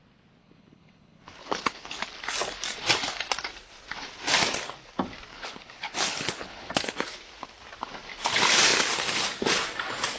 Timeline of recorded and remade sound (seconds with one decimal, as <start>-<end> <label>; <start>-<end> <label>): 0.0-0.4 recorded; 0.4-2.0 remade; 2.0-5.3 recorded; 5.3-6.7 remade; 6.7-10.2 recorded